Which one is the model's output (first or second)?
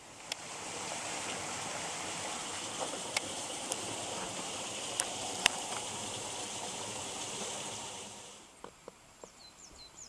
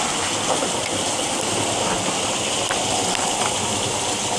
first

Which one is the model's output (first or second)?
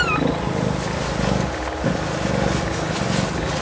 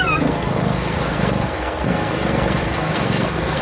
second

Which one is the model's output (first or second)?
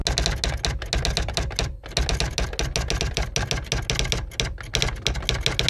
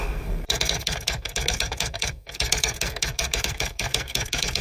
second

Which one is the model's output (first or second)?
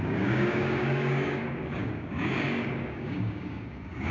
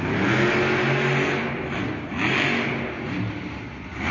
first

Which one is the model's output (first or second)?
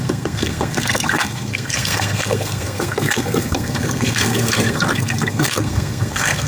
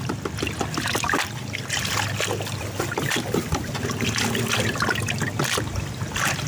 first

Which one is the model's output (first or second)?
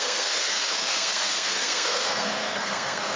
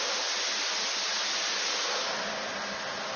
first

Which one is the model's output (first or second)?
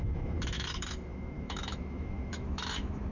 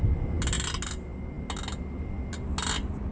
first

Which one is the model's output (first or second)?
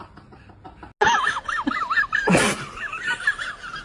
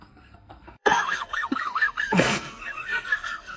second